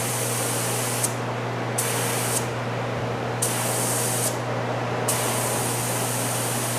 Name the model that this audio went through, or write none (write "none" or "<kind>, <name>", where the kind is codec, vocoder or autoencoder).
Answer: none